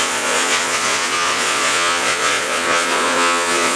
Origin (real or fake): fake